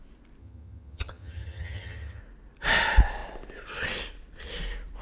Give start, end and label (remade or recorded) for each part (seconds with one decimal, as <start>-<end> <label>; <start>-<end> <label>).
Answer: 0.0-0.4 recorded; 0.4-2.2 remade; 2.2-5.0 recorded